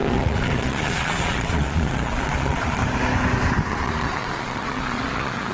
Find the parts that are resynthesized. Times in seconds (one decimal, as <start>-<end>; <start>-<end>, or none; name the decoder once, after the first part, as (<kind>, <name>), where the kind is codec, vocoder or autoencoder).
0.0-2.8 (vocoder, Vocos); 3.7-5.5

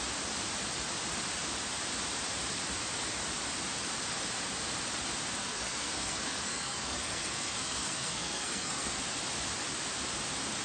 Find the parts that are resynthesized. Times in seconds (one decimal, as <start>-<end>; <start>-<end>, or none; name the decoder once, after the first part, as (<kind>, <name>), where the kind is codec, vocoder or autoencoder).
5.4-9.0 (codec, SNAC)

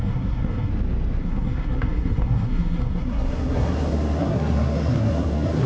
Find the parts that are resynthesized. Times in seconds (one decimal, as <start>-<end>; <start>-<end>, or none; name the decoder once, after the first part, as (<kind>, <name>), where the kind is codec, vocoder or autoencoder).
0.0-0.7 (codec, SNAC); 1.2-5.7